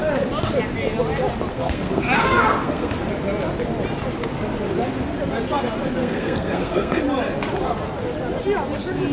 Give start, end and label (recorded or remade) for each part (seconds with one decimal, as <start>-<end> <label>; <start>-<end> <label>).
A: 0.0-1.5 recorded; 1.5-2.9 remade; 2.9-6.0 recorded; 6.0-7.0 remade; 7.0-9.1 recorded